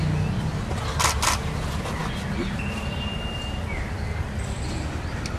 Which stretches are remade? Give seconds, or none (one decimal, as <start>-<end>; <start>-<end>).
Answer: none